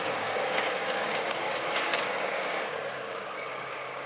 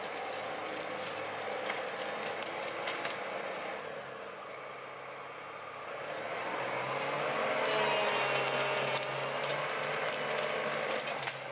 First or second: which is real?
second